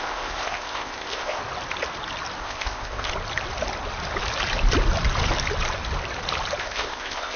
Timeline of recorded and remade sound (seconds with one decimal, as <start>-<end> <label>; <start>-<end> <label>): 0.0-1.4 remade; 1.4-2.4 recorded; 2.4-3.1 remade; 3.1-6.6 recorded; 6.6-7.4 remade